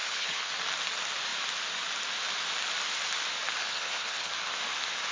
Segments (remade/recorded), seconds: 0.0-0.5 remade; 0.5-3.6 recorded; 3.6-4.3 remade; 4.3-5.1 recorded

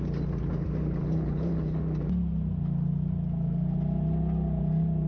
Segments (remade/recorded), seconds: 0.0-1.0 recorded; 1.0-1.8 remade; 1.8-5.1 recorded

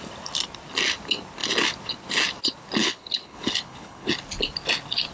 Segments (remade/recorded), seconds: 0.0-2.8 recorded; 2.8-4.1 remade; 4.1-5.1 recorded

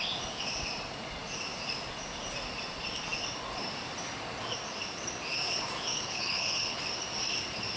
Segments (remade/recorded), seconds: 0.0-5.9 recorded; 5.9-6.8 remade; 6.8-7.8 recorded